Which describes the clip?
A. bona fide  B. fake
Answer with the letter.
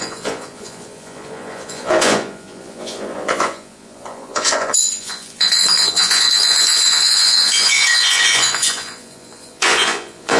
B